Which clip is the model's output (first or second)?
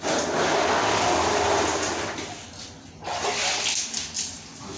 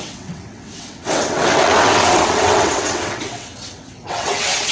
second